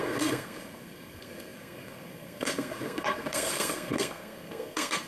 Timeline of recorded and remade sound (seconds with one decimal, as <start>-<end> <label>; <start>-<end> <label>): 0.0-5.1 remade